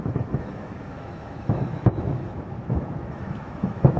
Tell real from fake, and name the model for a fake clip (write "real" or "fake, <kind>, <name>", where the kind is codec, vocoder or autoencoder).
fake, autoencoder, DAC-VAE